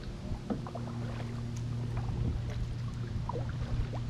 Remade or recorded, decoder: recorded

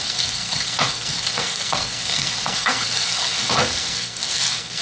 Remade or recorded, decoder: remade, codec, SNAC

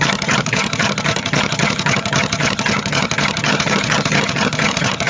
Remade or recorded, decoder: remade, vocoder, HiFi-GAN